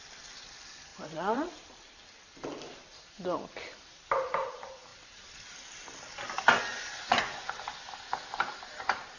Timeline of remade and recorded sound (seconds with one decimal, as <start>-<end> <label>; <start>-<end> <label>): 0.0-0.9 recorded; 0.9-1.5 remade; 1.5-6.7 recorded; 6.7-7.5 remade; 7.5-9.2 recorded